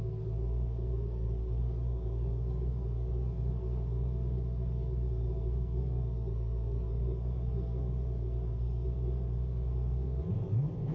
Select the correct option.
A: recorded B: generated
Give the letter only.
B